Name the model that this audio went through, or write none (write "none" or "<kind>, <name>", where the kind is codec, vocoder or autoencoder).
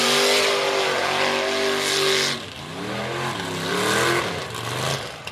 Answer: none